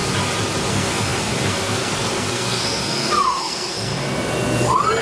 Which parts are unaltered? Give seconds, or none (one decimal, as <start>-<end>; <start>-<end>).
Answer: 0.0-0.7; 3.9-5.0